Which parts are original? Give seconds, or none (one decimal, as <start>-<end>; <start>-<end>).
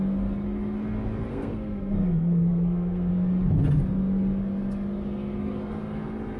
0.0-1.3; 3.1-6.4